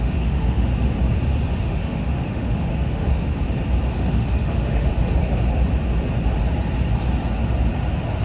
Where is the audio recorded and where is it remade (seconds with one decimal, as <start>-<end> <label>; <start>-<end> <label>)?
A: 0.0-0.7 remade; 0.7-1.6 recorded; 1.6-3.3 remade; 3.3-3.9 recorded; 3.9-4.9 remade; 4.9-8.2 recorded